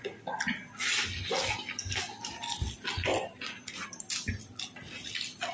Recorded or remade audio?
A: recorded